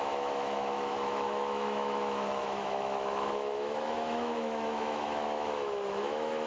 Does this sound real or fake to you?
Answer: fake